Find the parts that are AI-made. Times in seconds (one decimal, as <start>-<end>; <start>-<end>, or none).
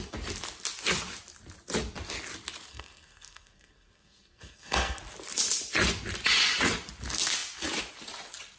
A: 2.7-5.0